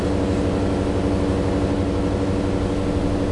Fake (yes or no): no